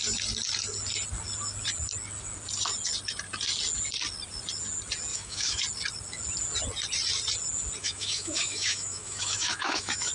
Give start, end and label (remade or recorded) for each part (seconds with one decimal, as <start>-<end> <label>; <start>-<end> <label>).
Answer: 0.0-5.1 recorded; 5.1-5.6 remade; 5.6-7.8 recorded; 7.8-10.1 remade